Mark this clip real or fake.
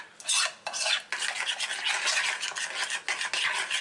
real